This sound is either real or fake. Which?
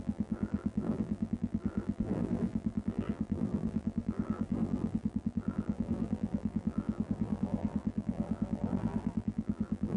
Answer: fake